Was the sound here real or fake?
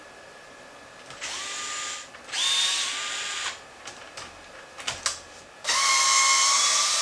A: real